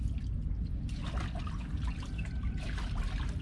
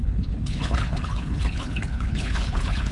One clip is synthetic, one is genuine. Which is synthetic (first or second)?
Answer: second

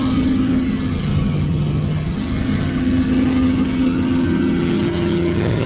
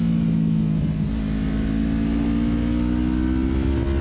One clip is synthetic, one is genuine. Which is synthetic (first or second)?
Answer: first